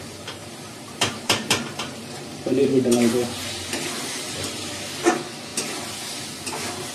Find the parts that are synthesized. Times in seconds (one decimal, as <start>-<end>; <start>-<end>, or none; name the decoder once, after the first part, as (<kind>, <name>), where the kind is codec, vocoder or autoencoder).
0.4-4.5 (vocoder, BigVGAN v2)